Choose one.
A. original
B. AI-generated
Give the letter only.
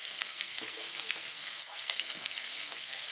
B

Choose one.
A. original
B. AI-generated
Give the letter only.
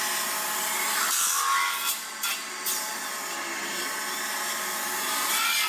A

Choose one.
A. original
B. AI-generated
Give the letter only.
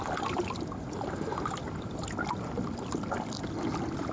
A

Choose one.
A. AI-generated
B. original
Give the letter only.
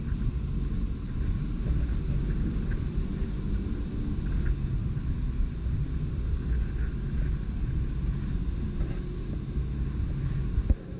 B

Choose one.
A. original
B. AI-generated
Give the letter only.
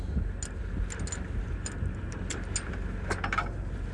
A